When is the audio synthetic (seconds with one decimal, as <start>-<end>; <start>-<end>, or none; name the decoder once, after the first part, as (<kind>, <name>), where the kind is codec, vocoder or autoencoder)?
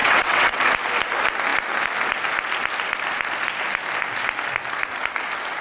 0.0-0.6 (vocoder, WaveNeXt)